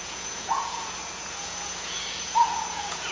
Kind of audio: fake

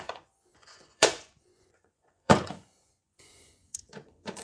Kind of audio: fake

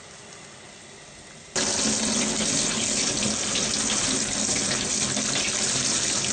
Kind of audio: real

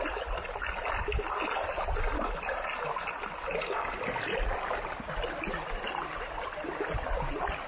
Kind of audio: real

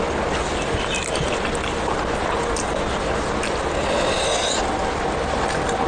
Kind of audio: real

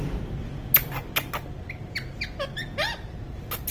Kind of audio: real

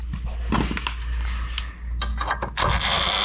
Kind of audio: real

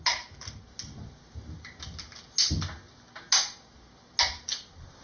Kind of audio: real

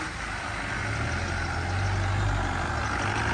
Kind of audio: real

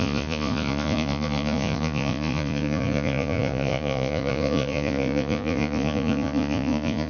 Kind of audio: fake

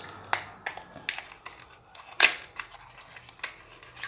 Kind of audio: real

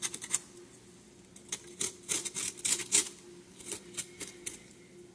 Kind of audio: real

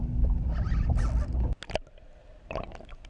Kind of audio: real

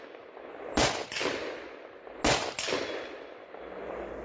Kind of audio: real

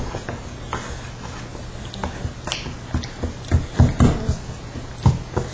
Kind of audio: real